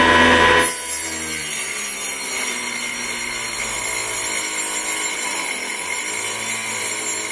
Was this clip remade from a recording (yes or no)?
no